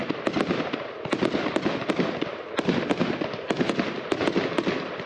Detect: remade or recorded recorded